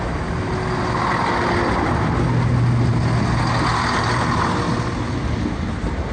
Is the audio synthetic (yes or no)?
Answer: no